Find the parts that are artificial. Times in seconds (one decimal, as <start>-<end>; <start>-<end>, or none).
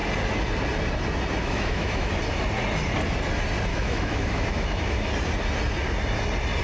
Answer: 1.4-2.1; 3.7-5.1